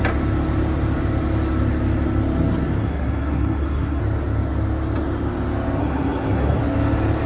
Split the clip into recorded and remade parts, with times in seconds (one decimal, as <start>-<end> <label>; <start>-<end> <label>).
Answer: 0.0-2.8 recorded; 2.8-4.0 remade; 4.0-5.8 recorded; 5.8-6.6 remade; 6.6-7.3 recorded